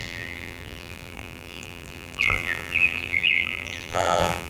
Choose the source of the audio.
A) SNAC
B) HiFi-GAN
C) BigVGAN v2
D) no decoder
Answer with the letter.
C